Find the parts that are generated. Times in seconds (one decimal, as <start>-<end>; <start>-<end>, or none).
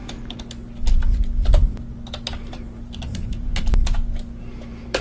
2.5-3.5; 4.4-5.0